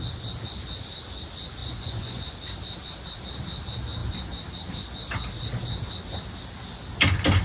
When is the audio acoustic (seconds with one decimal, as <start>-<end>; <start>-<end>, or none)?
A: 0.0-1.6; 2.2-7.4

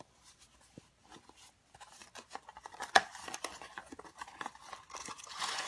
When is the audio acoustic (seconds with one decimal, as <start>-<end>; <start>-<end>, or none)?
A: 0.0-2.0; 3.9-5.0

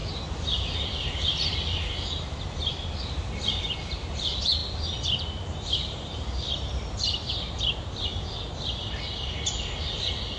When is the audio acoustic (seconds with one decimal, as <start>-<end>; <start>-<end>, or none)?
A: 0.0-3.9; 4.6-5.5; 8.1-10.0

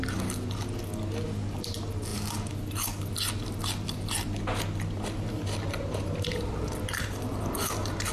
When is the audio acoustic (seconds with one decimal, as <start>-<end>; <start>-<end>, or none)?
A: 0.0-8.1

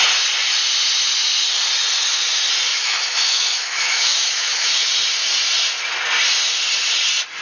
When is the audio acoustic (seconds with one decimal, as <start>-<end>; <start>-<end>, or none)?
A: 0.0-2.7; 4.9-7.4

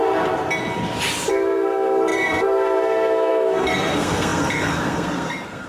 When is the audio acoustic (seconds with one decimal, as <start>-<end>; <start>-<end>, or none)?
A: 0.0-1.3